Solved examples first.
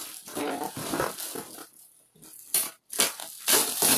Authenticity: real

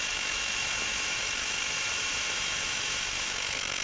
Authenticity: fake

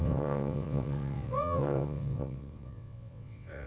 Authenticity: fake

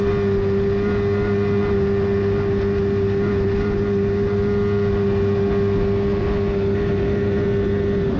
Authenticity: real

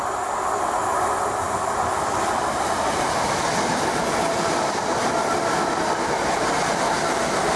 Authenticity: real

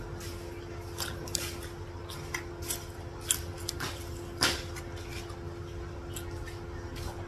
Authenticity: real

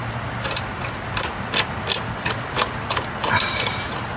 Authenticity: real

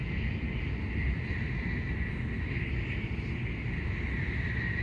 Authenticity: real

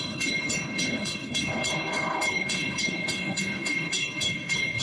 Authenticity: fake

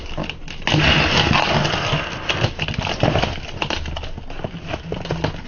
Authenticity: real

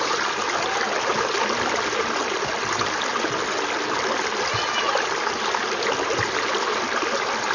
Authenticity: real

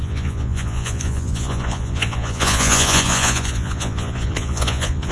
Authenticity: fake